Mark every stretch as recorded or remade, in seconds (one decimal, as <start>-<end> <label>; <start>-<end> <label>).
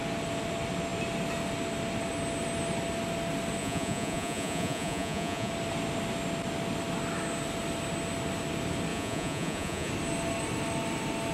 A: 0.0-3.6 recorded; 3.6-5.5 remade; 5.5-8.9 recorded; 8.9-9.9 remade; 9.9-11.3 recorded